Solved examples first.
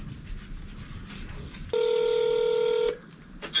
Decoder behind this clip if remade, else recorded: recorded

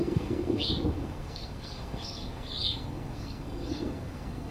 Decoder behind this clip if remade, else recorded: remade, codec, SNAC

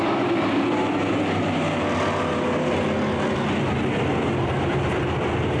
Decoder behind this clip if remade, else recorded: recorded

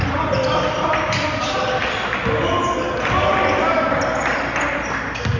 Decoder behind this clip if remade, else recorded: recorded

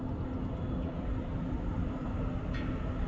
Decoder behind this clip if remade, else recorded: recorded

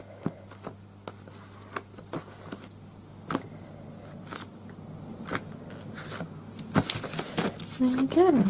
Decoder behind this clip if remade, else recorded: recorded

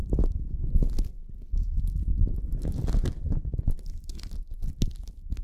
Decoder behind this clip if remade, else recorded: recorded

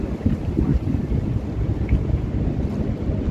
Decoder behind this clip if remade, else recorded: recorded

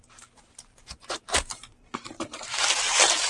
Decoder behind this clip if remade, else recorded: remade, vocoder, BigVGAN v2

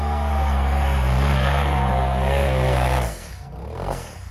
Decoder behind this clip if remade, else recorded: remade, codec, SNAC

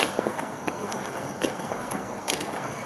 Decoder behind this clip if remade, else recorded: remade, codec, SNAC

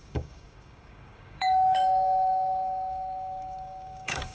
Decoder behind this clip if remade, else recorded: remade, codec, DAC